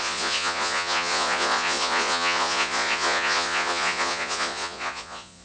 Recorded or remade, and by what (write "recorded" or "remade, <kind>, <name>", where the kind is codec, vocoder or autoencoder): remade, vocoder, Vocos